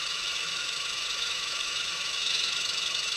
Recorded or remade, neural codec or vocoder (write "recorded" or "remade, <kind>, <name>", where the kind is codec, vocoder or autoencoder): remade, autoencoder, DAC-VAE